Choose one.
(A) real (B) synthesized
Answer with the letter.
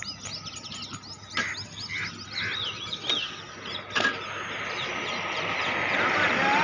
A